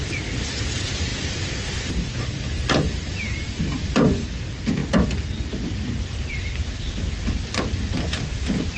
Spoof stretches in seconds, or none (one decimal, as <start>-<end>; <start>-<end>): 0.0-4.8; 6.3-8.8